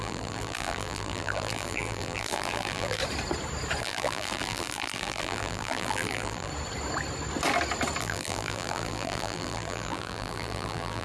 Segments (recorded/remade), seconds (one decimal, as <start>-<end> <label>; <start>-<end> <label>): 0.0-3.0 remade; 3.0-3.8 recorded; 3.8-6.5 remade; 6.5-8.0 recorded; 8.0-11.0 remade